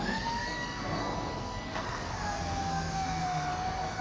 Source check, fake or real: fake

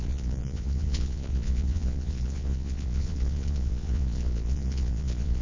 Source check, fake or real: fake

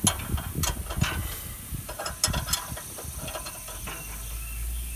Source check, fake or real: real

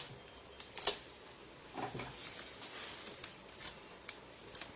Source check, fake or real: fake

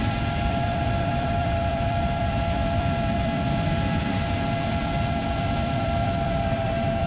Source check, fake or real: fake